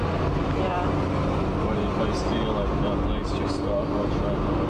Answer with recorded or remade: recorded